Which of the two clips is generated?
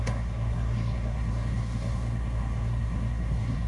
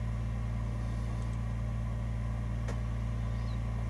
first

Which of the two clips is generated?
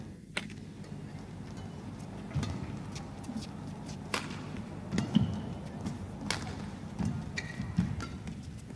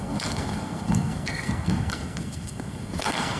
second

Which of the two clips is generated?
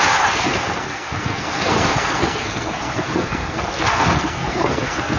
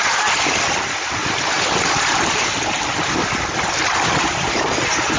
first